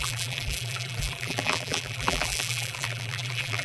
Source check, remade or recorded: remade